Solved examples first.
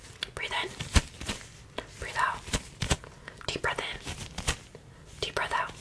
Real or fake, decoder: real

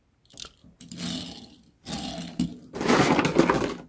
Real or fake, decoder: real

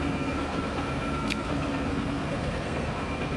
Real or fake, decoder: fake, codec, SNAC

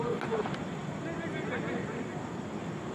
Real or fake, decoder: real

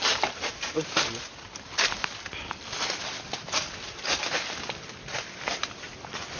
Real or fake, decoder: real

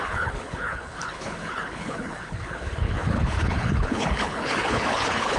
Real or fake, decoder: fake, codec, HILCodec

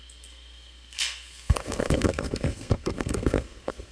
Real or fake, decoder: fake, codec, SNAC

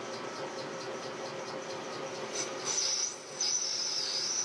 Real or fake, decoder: real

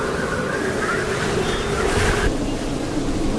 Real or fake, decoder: real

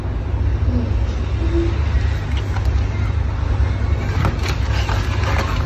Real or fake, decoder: real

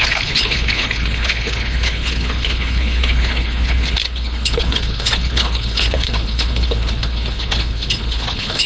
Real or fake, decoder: fake, codec, HILCodec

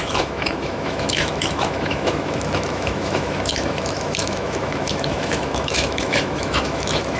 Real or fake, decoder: fake, autoencoder, DAC-VAE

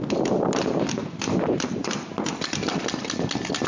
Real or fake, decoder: real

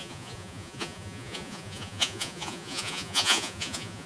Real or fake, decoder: fake, vocoder, Vocos